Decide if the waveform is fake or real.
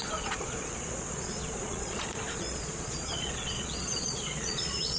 fake